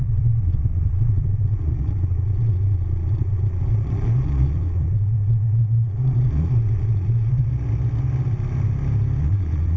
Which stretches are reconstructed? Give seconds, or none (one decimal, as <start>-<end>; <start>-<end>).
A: 0.0-7.5; 9.2-9.8